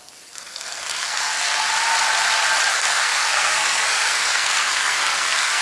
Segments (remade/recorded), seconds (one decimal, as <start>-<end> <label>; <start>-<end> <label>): 0.0-1.7 remade; 1.7-2.7 recorded; 2.7-5.6 remade